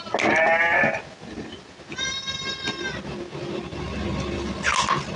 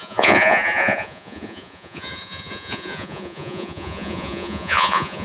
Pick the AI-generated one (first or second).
second